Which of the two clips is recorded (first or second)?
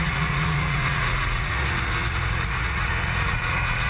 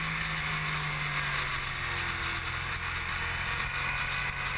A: second